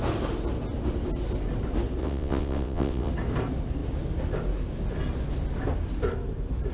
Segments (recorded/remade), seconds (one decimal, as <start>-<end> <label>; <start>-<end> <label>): 0.0-2.0 recorded; 2.0-3.1 remade; 3.1-6.7 recorded